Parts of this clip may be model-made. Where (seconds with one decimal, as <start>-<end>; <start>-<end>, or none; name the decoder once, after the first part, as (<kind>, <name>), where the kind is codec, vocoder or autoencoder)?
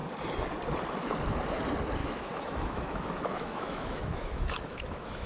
2.0-5.3 (autoencoder, DAC-VAE)